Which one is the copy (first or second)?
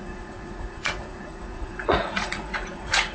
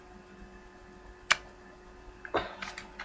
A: first